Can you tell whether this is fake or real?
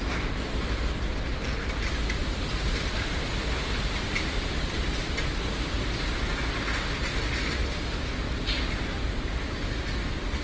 real